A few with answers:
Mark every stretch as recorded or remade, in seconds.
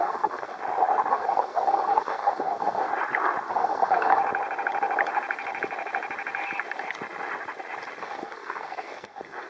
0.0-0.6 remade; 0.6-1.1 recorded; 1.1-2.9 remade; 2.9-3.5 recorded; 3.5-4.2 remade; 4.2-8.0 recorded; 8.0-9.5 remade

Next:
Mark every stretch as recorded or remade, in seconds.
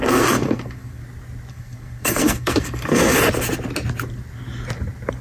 0.0-1.0 remade; 1.0-1.5 recorded; 1.5-3.0 remade; 3.0-5.2 recorded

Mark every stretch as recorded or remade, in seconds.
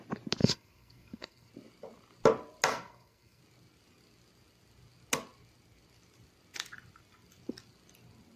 0.0-0.4 recorded; 0.4-1.5 remade; 1.5-2.7 recorded; 2.7-3.4 remade; 3.4-8.4 recorded